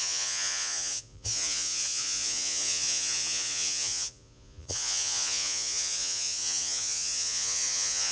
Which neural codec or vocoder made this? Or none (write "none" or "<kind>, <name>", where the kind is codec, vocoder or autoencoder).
vocoder, Vocos